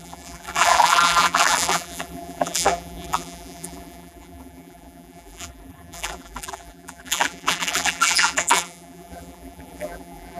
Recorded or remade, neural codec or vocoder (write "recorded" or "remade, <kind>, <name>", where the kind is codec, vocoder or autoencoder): remade, vocoder, BigVGAN v2